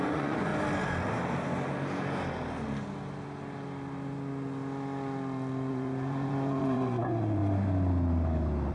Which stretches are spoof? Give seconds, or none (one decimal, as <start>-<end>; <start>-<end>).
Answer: 0.0-0.5; 5.7-7.4